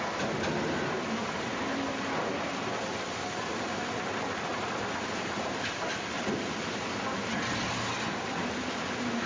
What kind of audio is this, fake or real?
real